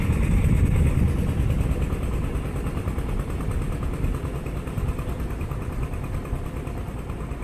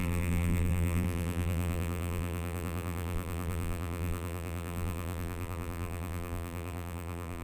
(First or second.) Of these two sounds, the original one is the first